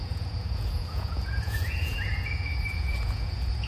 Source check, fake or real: fake